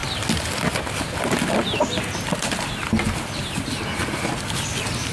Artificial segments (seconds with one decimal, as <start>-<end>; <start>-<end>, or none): none